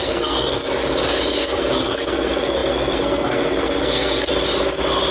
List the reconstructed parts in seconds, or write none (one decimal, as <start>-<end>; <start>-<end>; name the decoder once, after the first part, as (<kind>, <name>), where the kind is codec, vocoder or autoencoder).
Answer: 0.0-0.8 (codec, SNAC); 1.4-4.3